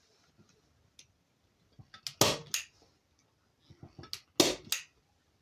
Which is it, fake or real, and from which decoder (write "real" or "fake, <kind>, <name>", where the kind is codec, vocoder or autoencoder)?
real